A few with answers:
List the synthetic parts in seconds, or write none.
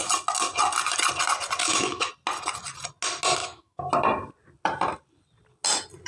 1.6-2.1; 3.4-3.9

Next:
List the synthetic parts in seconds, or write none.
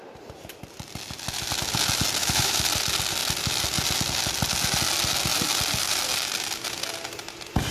2.2-2.7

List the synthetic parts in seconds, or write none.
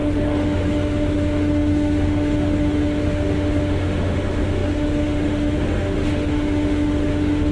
0.0-7.5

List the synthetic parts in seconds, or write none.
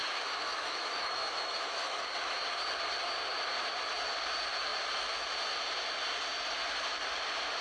0.0-2.0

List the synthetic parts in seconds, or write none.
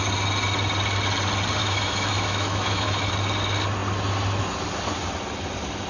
1.6-3.1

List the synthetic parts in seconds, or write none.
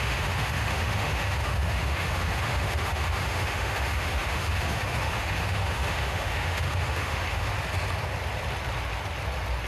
0.0-7.5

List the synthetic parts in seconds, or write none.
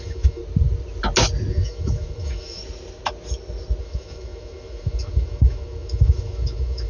0.0-0.4; 1.5-2.6; 3.8-6.9